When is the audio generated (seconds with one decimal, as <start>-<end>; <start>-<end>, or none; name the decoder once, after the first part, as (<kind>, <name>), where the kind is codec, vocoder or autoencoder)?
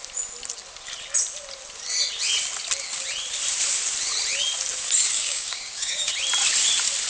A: 5.1-6.1 (codec, DAC)